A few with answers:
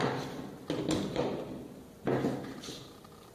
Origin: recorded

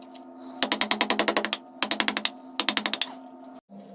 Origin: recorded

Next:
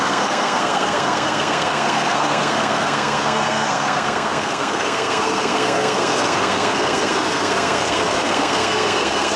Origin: remade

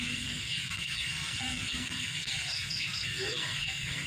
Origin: remade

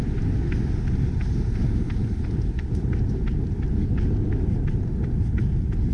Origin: recorded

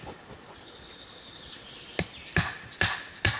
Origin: recorded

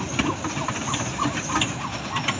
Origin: recorded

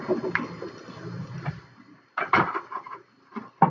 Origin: recorded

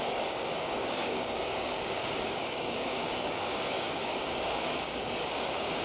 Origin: remade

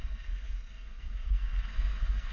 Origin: remade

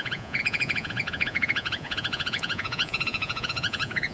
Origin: remade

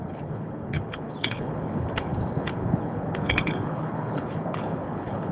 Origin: remade